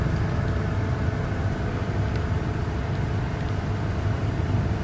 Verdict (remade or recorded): recorded